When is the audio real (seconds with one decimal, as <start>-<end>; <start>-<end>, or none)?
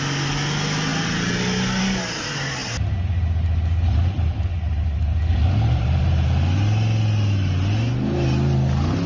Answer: 0.0-5.3; 6.3-9.1